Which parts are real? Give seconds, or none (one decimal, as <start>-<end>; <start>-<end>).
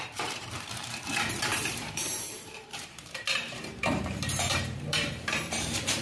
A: none